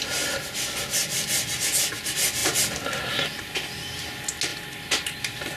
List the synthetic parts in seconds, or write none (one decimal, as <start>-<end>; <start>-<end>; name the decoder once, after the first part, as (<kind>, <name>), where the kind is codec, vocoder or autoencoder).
4.5-5.6 (vocoder, BigVGAN v2)